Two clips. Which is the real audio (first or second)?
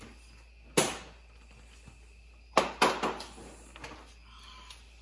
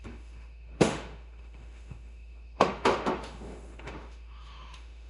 first